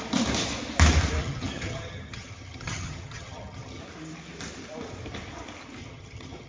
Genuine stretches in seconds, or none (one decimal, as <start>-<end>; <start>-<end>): 0.0-1.2; 3.8-5.8